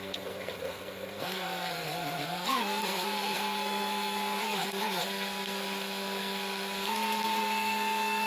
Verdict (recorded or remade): remade